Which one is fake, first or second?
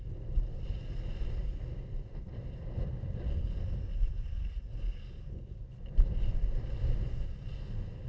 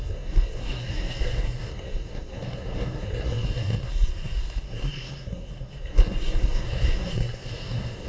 second